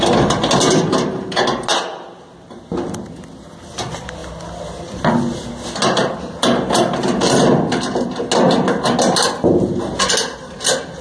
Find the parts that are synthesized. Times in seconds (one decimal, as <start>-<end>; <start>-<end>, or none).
none